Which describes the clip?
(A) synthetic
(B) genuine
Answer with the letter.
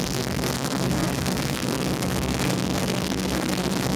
A